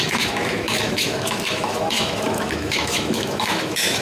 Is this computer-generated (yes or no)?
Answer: yes